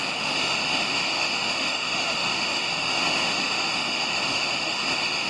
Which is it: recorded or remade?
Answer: remade